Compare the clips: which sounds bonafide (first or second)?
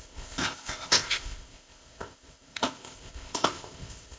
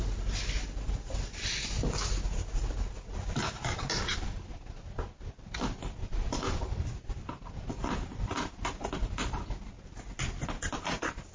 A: second